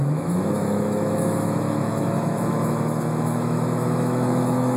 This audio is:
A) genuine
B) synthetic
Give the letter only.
B